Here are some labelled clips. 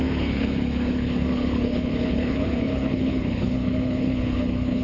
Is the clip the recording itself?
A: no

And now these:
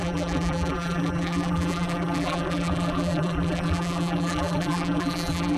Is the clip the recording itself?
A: no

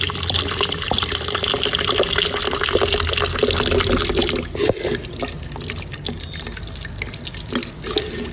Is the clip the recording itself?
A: yes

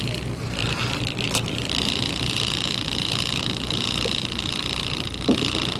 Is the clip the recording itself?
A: no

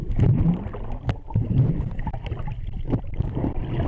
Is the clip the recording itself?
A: yes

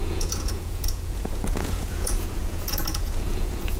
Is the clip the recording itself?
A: no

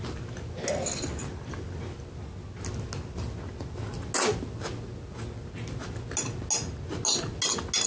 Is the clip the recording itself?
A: yes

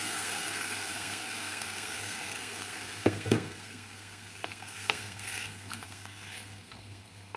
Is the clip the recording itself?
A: no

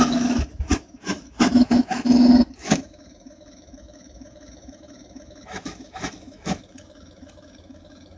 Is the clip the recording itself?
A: no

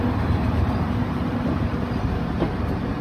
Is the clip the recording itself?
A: no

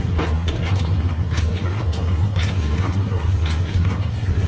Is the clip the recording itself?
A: no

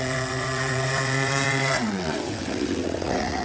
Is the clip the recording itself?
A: no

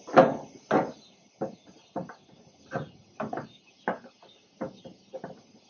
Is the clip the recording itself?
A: yes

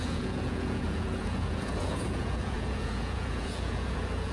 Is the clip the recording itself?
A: no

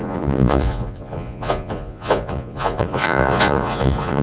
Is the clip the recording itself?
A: no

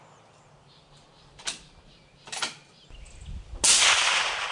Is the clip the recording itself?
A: yes